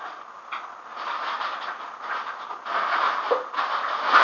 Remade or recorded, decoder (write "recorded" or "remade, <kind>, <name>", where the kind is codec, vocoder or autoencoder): recorded